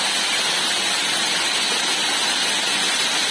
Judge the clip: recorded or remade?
recorded